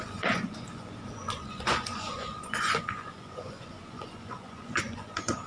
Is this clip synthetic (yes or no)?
yes